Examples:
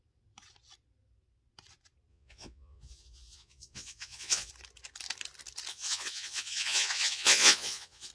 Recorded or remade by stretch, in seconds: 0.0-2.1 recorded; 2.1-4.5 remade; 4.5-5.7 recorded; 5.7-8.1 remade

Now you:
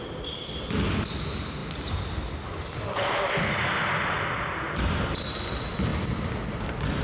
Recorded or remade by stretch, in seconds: 0.0-7.0 recorded

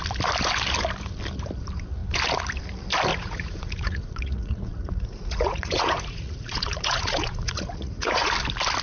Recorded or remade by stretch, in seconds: 0.0-3.1 recorded; 3.1-8.3 remade; 8.3-8.8 recorded

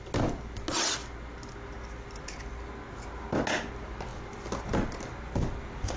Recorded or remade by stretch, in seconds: 0.0-6.0 recorded

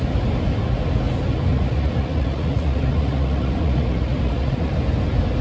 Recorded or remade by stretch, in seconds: 0.0-1.5 recorded; 1.5-4.7 remade; 4.7-5.4 recorded

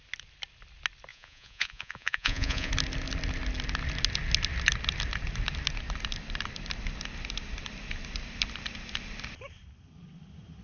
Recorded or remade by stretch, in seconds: 0.0-1.1 recorded; 1.1-2.7 remade; 2.7-10.6 recorded